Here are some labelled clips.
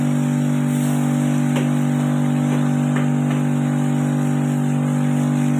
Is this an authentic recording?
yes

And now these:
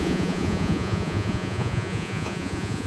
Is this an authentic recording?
no